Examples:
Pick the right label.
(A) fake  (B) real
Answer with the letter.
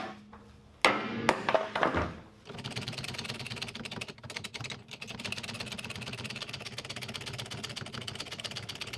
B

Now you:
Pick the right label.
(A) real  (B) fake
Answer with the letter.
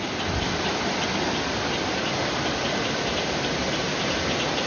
A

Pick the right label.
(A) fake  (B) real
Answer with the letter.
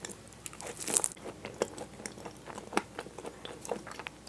B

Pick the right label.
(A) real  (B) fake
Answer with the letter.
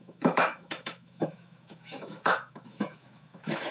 B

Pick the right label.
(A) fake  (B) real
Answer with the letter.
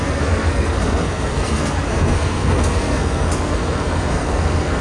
A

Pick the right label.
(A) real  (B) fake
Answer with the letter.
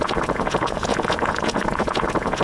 B